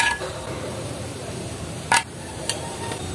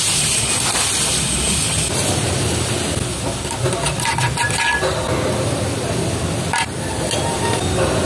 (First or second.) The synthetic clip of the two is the first